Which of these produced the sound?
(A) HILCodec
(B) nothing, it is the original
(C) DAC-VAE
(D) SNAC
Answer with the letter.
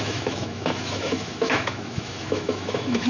C